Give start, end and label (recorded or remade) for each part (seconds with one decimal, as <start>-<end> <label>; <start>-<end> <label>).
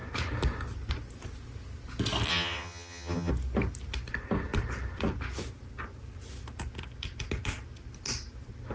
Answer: 0.0-2.3 recorded; 2.3-3.3 remade; 3.3-8.7 recorded